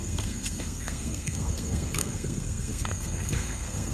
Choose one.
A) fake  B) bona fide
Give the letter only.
A